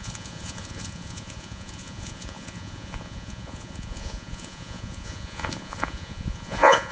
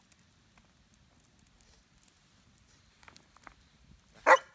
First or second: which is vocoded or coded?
first